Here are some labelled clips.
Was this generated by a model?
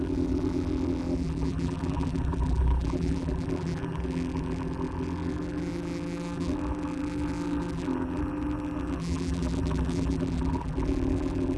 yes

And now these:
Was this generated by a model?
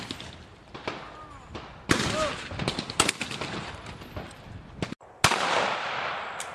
no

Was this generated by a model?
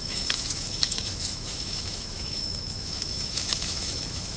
yes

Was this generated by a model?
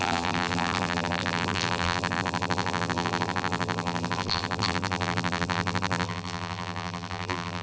yes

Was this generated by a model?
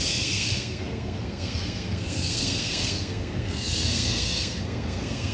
yes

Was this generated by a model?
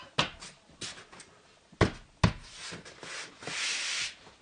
no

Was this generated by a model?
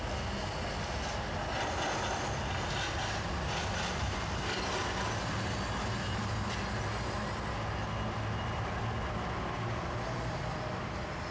no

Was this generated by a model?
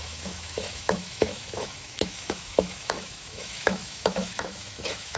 yes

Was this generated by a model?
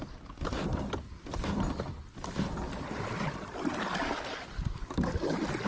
no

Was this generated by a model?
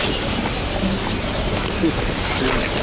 no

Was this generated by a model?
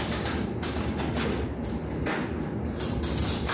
no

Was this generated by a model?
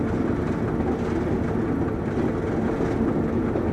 no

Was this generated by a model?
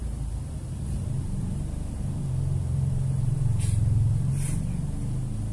yes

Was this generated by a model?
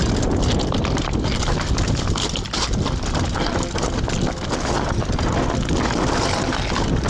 no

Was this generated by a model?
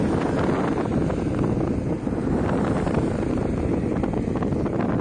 no